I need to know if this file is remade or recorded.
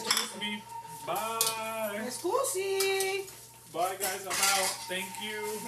recorded